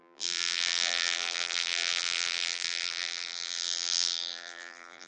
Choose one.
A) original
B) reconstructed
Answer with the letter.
B